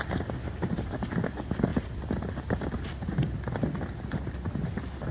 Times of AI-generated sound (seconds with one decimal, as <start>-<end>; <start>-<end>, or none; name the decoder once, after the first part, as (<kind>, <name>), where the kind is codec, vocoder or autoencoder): none